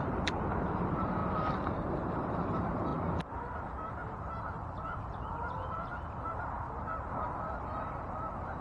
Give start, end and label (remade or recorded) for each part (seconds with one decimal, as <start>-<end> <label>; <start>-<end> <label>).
0.0-1.2 remade; 1.2-1.9 recorded; 1.9-2.9 remade; 2.9-3.9 recorded; 3.9-8.6 remade